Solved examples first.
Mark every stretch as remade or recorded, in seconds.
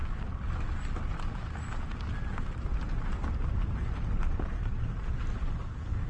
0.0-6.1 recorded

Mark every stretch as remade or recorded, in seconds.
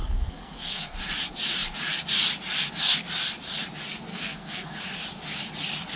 0.0-1.0 remade; 1.0-4.1 recorded; 4.1-4.8 remade; 4.8-6.0 recorded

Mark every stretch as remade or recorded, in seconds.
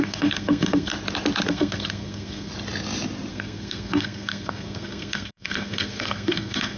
0.0-0.9 remade; 0.9-1.5 recorded; 1.5-2.5 remade; 2.5-3.3 recorded; 3.3-6.8 remade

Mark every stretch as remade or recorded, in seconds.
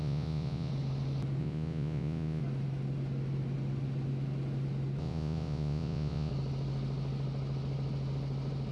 0.0-0.7 remade; 0.7-1.4 recorded; 1.4-2.4 remade; 2.4-5.0 recorded; 5.0-6.3 remade; 6.3-8.7 recorded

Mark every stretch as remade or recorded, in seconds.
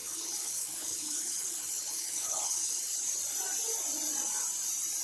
0.0-3.0 remade; 3.0-5.0 recorded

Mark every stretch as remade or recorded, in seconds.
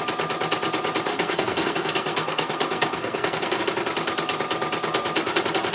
0.0-1.1 recorded; 1.1-3.6 remade; 3.6-5.7 recorded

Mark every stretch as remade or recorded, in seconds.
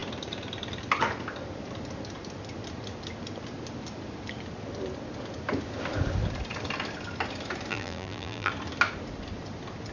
0.0-7.7 recorded; 7.7-8.5 remade; 8.5-9.9 recorded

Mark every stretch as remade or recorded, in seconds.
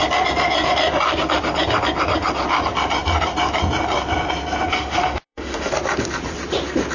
0.0-4.7 recorded; 4.7-5.7 remade; 5.7-6.9 recorded